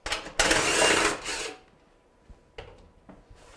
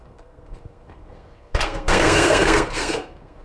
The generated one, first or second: second